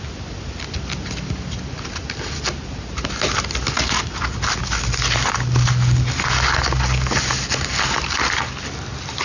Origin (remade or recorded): recorded